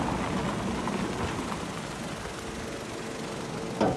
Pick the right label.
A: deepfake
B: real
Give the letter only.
B